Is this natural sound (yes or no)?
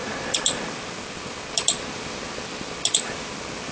yes